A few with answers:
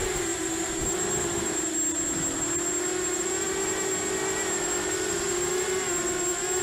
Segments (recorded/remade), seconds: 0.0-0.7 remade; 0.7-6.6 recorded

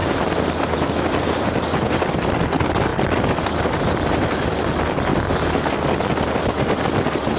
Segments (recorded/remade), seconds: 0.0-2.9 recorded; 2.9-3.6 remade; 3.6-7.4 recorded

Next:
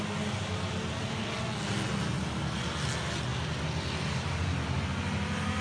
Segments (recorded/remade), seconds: 0.0-3.3 recorded; 3.3-4.4 remade; 4.4-5.6 recorded

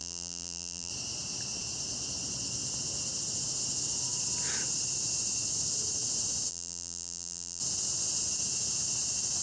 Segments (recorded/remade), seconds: 0.0-0.9 remade; 0.9-6.5 recorded; 6.5-7.6 remade; 7.6-9.4 recorded

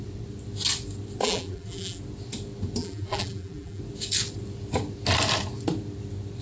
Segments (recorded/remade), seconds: 0.0-1.2 recorded; 1.2-2.0 remade; 2.0-2.8 recorded; 2.8-3.8 remade; 3.8-6.4 recorded

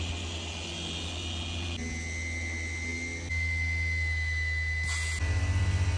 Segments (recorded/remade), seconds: 0.0-6.0 recorded